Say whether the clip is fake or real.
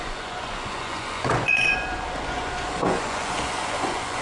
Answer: fake